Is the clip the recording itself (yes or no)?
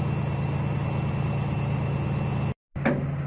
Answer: yes